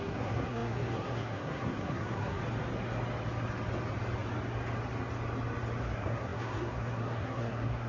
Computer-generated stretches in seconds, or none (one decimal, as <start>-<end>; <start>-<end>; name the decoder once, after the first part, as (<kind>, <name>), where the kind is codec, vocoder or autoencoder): 0.0-2.4 (codec, SNAC); 5.8-7.9